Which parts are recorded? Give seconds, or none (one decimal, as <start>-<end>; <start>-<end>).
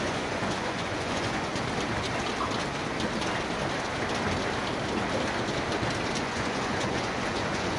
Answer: 1.5-6.2